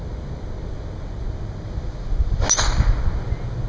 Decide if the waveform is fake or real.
real